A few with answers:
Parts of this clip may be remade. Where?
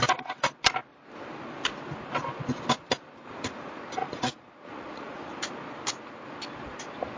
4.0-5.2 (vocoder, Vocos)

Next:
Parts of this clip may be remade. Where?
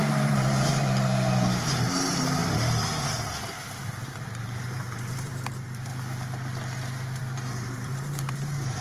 0.0-2.4 (vocoder, BigVGAN v2); 3.9-5.9; 7.2-8.8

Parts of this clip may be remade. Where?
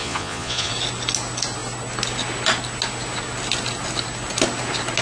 0.0-0.7 (vocoder, Vocos)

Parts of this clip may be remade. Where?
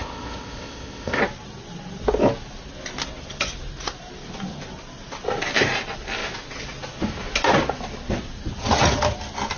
0.0-1.2 (codec, ZipCodec)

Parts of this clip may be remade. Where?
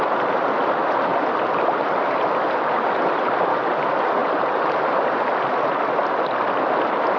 none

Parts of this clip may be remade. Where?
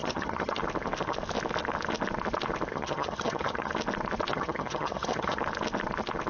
0.0-0.6 (vocoder, HiFi-GAN); 2.7-3.7; 4.3-5.4